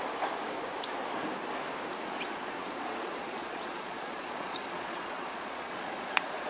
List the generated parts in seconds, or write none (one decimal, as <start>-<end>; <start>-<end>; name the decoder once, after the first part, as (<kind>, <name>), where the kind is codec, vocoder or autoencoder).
2.6-6.5 (vocoder, Vocos)